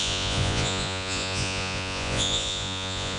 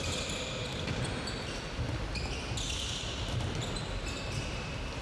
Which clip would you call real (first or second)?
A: second